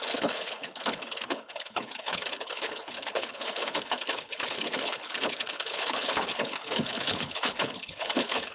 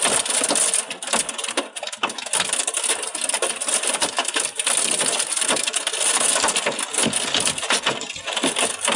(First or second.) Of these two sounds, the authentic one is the second